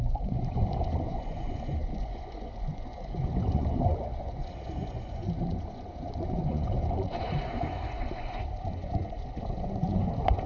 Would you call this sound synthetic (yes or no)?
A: yes